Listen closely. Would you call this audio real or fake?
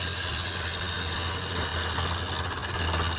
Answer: real